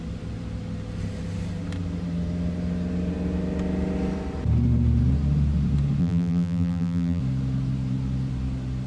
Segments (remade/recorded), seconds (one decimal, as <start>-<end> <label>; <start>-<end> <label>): 0.0-6.0 recorded; 6.0-7.2 remade; 7.2-8.9 recorded

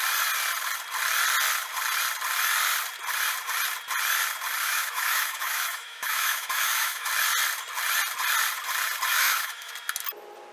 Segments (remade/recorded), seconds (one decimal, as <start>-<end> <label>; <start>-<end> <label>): 0.0-4.7 recorded; 4.7-7.1 remade; 7.1-9.1 recorded; 9.1-9.7 remade; 9.7-10.5 recorded

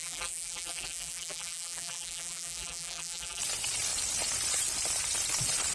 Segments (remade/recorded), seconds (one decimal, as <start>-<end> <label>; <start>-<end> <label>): 0.0-3.4 remade; 3.4-5.7 recorded

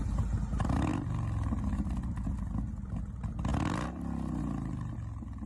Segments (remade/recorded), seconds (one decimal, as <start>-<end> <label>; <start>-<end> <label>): 0.0-5.5 recorded

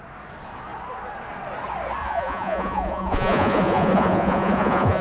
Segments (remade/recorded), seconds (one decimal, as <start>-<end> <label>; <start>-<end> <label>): 0.0-2.0 recorded; 2.0-5.0 remade